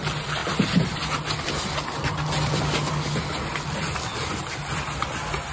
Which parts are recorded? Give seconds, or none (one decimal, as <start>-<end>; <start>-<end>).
0.0-4.1; 4.8-5.5